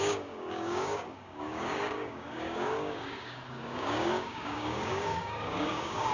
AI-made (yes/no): yes